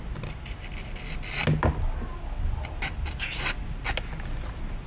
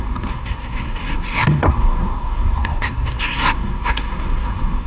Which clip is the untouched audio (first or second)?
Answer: first